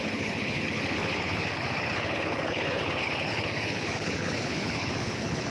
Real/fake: fake